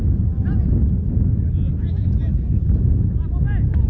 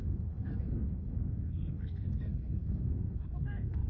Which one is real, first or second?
first